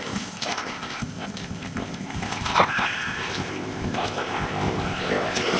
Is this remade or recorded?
remade